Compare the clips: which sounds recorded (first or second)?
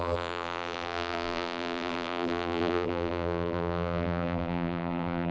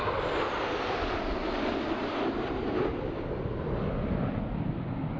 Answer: second